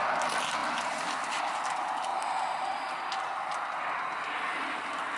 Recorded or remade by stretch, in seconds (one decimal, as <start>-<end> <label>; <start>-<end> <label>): 0.0-2.1 remade; 2.1-5.2 recorded